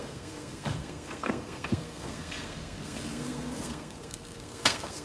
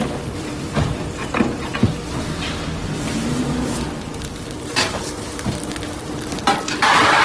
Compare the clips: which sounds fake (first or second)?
first